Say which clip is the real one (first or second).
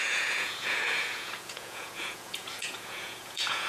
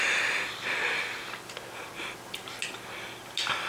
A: second